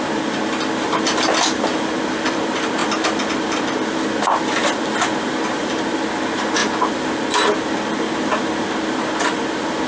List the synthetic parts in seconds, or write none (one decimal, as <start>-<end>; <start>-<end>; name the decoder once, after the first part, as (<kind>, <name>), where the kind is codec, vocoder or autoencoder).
0.0-2.8 (vocoder, BigVGAN v2); 3.4-9.9